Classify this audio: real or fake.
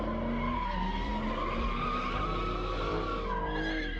real